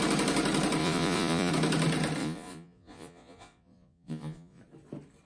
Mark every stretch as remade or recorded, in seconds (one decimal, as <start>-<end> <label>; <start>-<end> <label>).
0.0-0.8 recorded; 0.8-1.5 remade; 1.5-2.2 recorded; 2.2-4.6 remade; 4.6-5.3 recorded